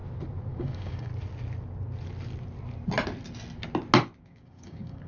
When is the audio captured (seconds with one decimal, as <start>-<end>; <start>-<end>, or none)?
0.0-0.5; 1.1-4.2